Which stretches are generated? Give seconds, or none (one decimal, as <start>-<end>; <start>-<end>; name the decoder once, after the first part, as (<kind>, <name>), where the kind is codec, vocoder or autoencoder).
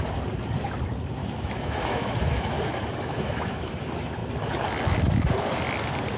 1.2-3.7 (autoencoder, DAC-VAE)